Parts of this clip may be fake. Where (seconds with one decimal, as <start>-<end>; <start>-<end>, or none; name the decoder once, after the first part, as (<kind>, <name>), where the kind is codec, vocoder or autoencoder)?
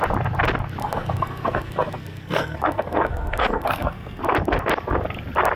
0.8-4.2 (codec, SNAC)